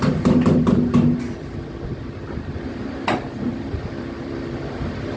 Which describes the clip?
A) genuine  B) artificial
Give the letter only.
A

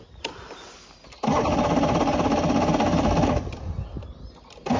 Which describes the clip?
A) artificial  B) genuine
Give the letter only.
B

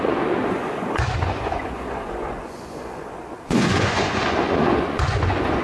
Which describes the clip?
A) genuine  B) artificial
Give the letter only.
B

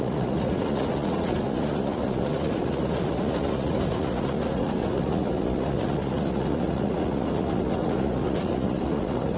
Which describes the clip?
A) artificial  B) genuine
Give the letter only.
A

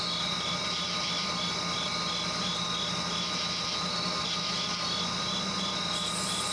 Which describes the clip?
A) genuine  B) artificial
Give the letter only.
A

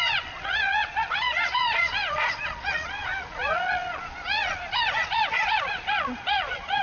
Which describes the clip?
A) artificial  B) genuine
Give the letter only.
A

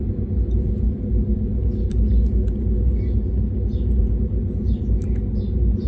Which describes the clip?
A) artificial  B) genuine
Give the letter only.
B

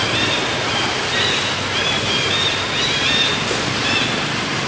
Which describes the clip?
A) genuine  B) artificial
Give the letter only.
A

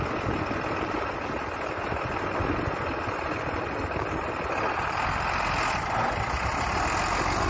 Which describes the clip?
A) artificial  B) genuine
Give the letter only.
B